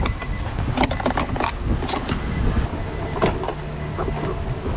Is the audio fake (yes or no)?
no